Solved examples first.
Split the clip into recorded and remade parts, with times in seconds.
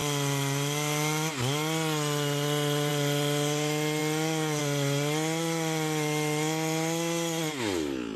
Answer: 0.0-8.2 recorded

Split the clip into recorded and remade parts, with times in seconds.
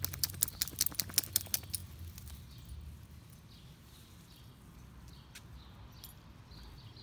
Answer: 0.0-7.0 recorded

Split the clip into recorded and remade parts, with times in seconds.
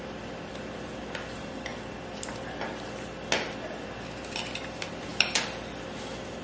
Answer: 0.0-1.7 remade; 1.7-4.0 recorded; 4.0-6.4 remade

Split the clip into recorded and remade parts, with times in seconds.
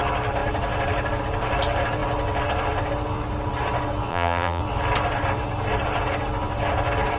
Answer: 0.0-4.1 recorded; 4.1-4.6 remade; 4.6-7.2 recorded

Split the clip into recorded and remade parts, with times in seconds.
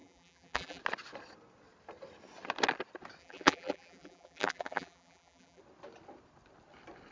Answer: 0.0-0.8 remade; 0.8-3.2 recorded; 3.2-5.6 remade; 5.6-7.1 recorded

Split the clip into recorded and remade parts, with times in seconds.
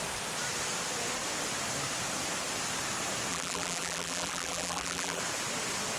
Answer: 0.0-3.3 recorded; 3.3-5.2 remade; 5.2-6.0 recorded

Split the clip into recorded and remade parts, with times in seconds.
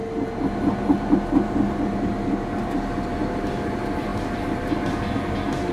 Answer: 0.0-5.7 recorded